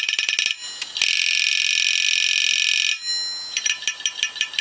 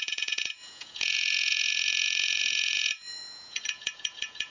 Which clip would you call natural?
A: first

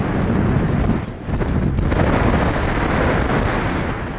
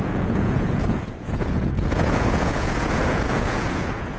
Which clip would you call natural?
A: first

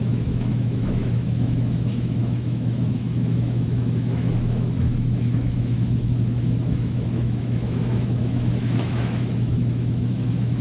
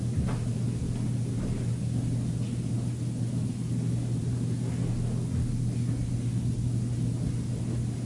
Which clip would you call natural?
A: second